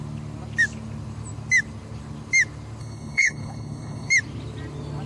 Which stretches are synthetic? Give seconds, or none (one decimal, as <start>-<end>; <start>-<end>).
2.8-4.1